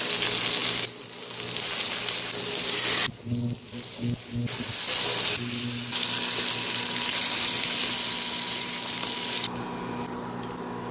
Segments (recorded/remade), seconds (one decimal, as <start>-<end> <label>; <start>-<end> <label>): 0.0-10.9 recorded